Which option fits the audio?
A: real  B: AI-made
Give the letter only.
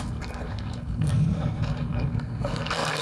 B